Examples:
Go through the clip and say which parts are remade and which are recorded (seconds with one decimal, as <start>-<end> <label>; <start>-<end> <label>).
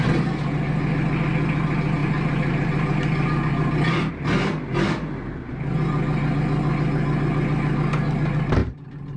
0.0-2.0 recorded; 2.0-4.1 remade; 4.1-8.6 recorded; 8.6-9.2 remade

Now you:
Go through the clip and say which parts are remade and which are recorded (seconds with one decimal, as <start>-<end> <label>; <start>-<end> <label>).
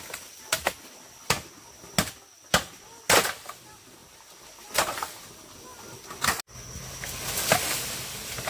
0.0-4.0 recorded; 4.0-5.3 remade; 5.3-8.5 recorded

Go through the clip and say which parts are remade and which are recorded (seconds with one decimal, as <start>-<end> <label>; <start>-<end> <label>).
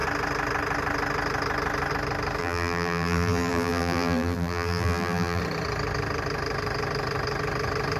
0.0-2.4 recorded; 2.4-5.4 remade; 5.4-8.0 recorded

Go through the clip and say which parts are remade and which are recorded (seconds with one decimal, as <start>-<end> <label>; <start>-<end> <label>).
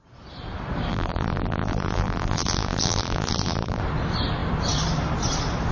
0.0-0.9 recorded; 0.9-3.8 remade; 3.8-5.7 recorded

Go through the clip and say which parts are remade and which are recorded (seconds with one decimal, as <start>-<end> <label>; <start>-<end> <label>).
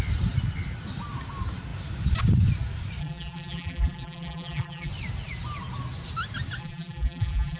0.0-3.0 recorded; 3.0-4.9 remade; 4.9-6.6 recorded; 6.6-7.6 remade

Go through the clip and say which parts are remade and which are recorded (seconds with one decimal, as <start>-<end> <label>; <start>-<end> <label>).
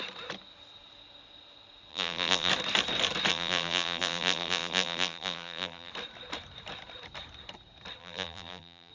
0.0-1.9 recorded; 1.9-2.5 remade; 2.5-3.3 recorded; 3.3-5.9 remade; 5.9-8.0 recorded; 8.0-8.9 remade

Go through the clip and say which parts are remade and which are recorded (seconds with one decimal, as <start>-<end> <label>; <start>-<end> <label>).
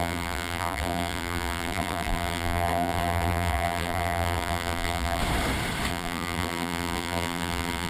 0.0-5.2 remade; 5.2-5.9 recorded; 5.9-7.9 remade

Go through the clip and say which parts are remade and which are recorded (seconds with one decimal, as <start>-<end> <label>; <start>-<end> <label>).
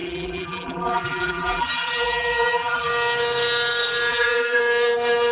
0.0-2.9 remade; 2.9-4.1 recorded; 4.1-4.6 remade; 4.6-5.3 recorded